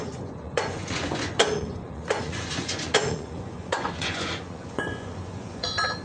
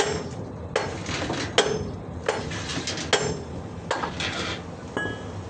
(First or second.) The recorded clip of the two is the second